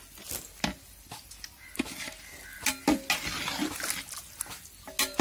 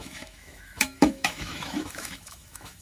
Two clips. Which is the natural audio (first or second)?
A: first